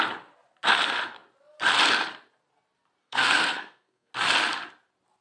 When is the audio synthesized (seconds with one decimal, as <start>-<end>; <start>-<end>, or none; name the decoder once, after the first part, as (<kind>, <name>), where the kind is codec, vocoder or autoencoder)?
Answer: 3.0-4.1 (codec, SNAC)